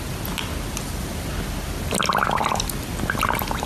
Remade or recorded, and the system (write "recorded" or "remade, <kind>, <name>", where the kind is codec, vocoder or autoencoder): recorded